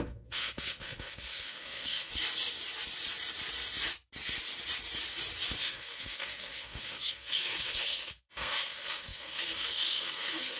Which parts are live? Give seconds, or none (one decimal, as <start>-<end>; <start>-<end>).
2.1-5.6